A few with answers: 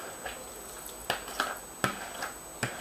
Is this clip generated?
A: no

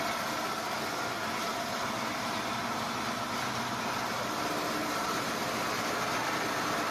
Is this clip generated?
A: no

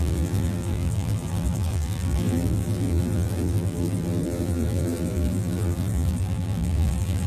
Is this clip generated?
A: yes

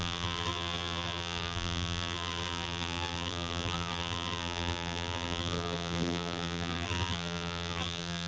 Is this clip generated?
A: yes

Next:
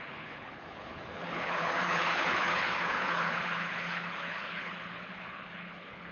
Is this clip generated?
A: yes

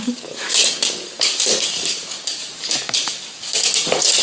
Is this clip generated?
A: yes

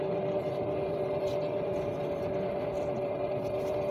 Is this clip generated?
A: no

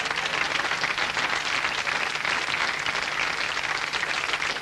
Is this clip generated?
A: no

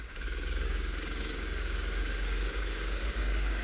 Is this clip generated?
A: yes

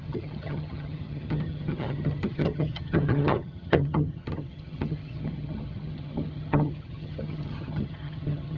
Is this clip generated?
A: yes